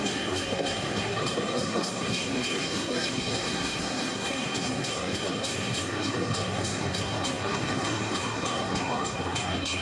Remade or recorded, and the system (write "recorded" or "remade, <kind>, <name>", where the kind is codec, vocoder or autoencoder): remade, codec, SNAC